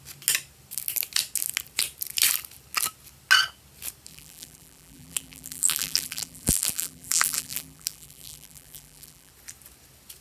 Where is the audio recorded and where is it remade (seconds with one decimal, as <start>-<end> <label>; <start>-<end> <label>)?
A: 0.0-4.1 recorded; 4.1-9.3 remade; 9.3-10.2 recorded